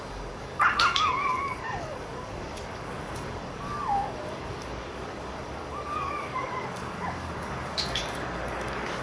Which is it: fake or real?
fake